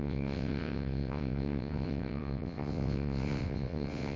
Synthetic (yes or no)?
yes